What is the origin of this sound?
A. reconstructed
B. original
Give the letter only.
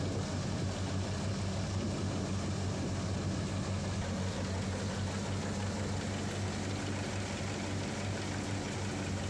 B